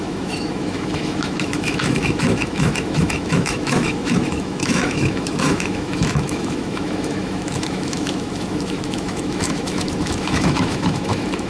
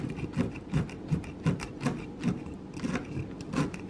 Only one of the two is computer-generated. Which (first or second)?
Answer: first